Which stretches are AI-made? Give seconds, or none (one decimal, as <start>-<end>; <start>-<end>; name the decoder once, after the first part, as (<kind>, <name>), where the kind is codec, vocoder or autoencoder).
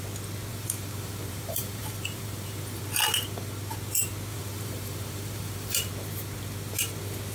0.5-2.8 (vocoder, BigVGAN v2); 4.3-5.9